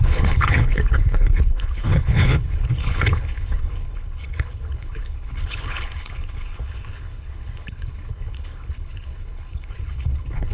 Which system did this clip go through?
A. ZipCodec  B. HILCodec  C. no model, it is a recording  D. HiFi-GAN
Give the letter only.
B